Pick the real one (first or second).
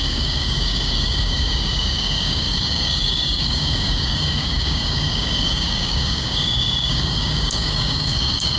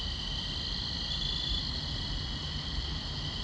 second